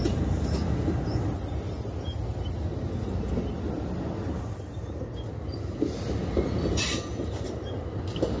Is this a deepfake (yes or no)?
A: no